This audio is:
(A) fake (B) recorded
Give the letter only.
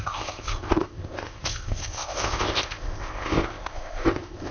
A